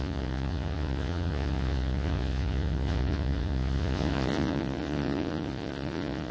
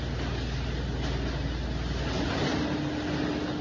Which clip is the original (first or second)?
second